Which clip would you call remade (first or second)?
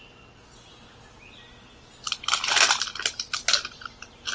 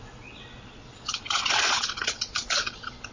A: second